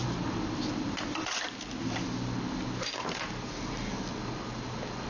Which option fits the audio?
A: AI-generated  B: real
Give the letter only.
B